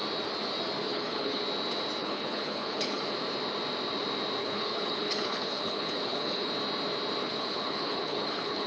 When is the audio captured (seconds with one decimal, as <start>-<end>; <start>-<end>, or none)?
0.0-0.9; 1.4-2.0; 3.0-4.4; 6.5-7.2